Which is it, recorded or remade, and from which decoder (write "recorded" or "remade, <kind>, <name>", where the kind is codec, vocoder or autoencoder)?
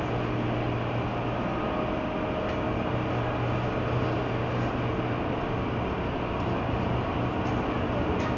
recorded